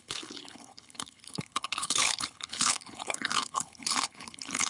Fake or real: fake